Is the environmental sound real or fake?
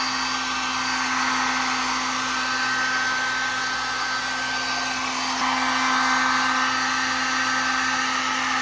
real